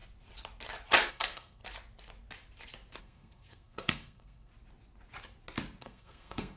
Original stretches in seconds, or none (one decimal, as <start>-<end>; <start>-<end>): 0.0-1.1; 1.6-3.0; 4.5-5.8